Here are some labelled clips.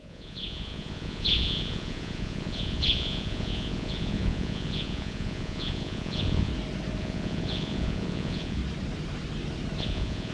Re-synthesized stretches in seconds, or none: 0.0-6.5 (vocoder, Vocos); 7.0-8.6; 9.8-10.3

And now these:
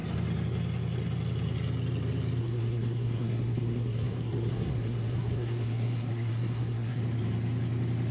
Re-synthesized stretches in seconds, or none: 2.4-7.0 (codec, SNAC)